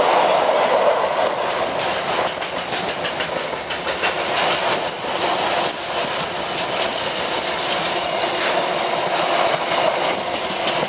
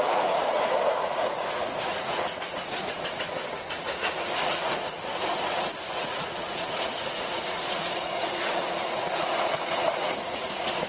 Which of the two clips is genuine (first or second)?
first